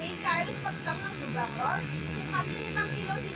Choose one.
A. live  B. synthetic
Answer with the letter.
B